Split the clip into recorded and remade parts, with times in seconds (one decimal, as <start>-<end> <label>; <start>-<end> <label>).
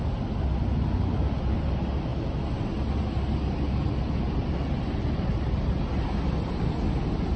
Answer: 0.0-7.4 recorded